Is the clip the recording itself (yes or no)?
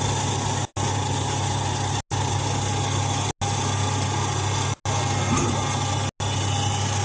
yes